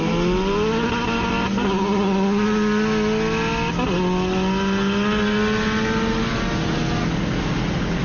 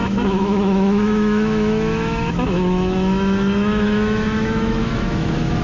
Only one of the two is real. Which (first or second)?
first